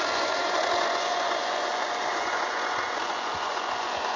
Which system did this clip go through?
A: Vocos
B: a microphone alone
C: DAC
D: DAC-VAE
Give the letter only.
A